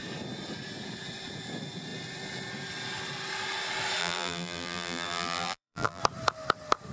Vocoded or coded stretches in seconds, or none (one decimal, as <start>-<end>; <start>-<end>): 4.0-6.0